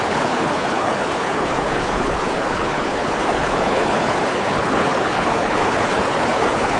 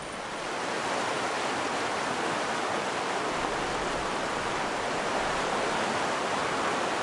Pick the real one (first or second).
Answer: second